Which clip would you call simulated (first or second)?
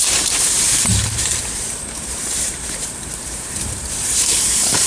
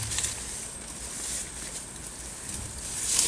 first